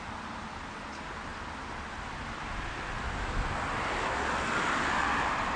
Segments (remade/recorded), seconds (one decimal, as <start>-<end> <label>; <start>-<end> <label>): 0.0-5.6 recorded

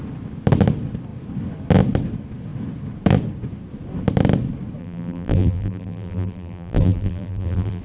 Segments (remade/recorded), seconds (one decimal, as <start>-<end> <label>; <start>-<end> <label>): 0.0-4.8 recorded; 4.8-7.8 remade

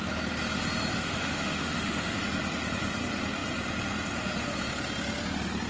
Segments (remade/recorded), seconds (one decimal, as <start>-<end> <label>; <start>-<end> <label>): 0.0-0.9 recorded; 0.9-2.2 remade; 2.2-5.7 recorded

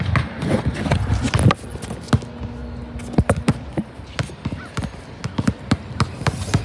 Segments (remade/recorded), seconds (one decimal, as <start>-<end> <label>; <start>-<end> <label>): 0.0-6.6 recorded